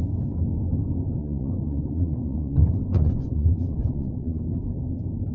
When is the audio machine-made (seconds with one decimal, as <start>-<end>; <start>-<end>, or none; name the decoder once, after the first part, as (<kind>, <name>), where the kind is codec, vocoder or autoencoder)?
1.2-4.4 (vocoder, Vocos)